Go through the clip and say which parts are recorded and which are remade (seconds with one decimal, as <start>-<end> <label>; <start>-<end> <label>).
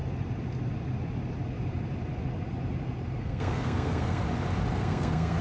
0.0-3.2 recorded; 3.2-4.2 remade; 4.2-4.7 recorded; 4.7-5.4 remade